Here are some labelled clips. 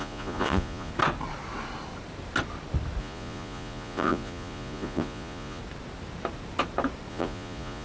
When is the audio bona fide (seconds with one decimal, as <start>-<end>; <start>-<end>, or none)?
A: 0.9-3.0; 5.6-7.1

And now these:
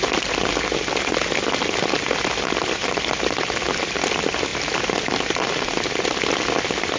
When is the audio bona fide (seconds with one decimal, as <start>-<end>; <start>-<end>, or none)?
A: 0.0-7.0

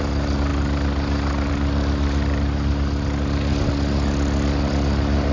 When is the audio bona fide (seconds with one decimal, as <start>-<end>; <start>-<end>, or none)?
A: 0.0-5.3